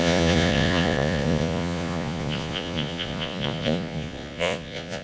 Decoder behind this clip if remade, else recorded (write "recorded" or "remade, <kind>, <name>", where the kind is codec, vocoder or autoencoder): remade, vocoder, Vocos